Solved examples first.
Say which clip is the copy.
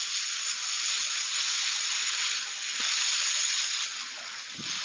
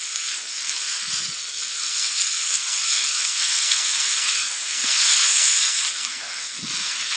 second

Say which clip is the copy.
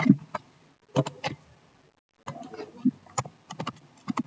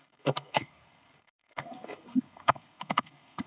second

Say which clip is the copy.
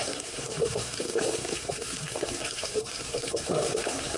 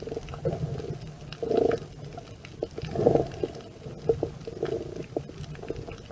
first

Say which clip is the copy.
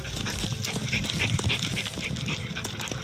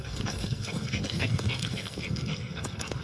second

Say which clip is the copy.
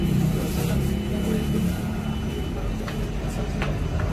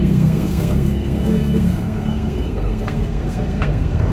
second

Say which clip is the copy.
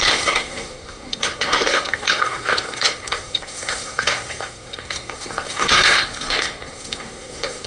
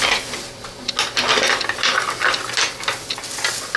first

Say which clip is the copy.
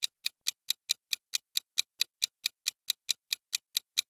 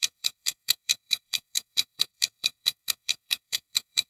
second